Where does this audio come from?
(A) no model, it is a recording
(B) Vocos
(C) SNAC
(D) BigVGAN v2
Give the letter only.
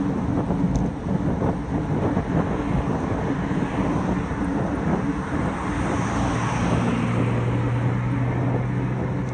A